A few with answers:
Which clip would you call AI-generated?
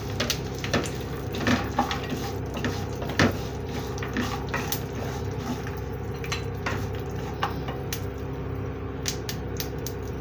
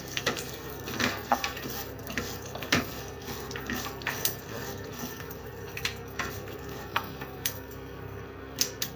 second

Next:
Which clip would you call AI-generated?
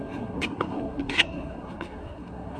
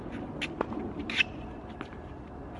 first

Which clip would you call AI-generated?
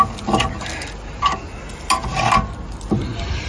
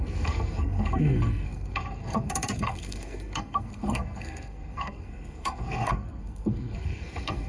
second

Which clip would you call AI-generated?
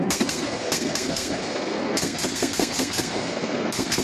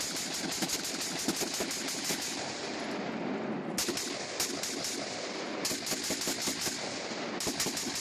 first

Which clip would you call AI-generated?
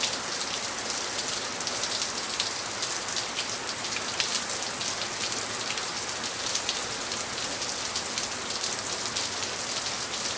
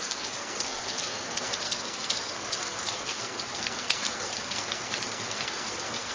second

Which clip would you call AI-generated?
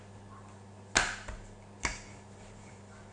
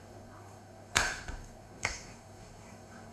second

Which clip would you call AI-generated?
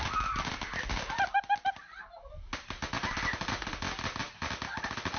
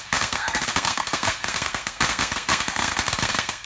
second